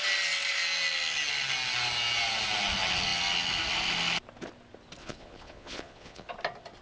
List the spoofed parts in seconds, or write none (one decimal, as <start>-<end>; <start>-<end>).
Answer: 5.0-6.3